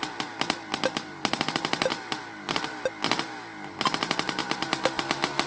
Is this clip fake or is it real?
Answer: real